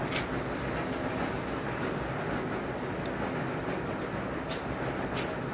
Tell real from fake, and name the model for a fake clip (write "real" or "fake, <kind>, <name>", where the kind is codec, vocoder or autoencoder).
real